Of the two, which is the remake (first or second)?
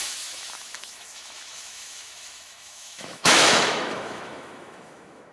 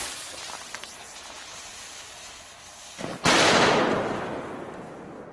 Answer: first